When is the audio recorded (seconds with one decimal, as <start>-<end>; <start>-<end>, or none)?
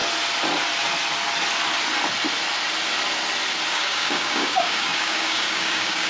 0.0-3.7